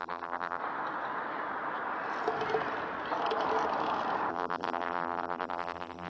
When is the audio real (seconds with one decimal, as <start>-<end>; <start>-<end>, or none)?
0.6-4.3

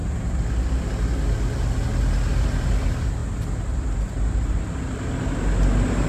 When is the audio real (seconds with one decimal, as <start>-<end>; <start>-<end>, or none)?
0.0-6.1